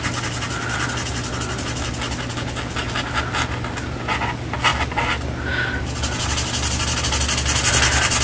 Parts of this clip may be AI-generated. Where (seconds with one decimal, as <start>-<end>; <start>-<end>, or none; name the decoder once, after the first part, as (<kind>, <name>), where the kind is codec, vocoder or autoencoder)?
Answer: none